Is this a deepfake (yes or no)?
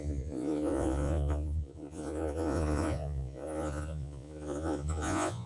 yes